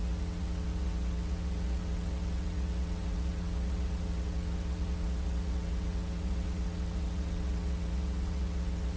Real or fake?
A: fake